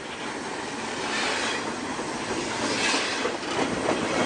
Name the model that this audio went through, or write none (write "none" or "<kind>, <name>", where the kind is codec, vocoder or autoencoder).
none